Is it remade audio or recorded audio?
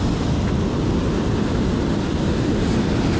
recorded